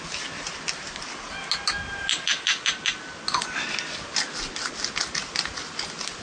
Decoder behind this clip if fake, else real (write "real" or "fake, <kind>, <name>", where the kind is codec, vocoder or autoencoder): real